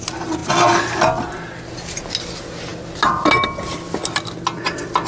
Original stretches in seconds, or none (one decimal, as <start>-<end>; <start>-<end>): 0.0-5.1